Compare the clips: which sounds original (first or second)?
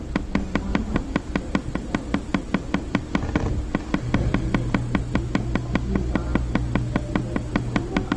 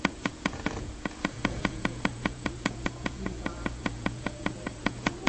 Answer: first